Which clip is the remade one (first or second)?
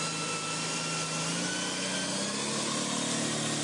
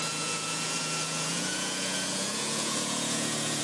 second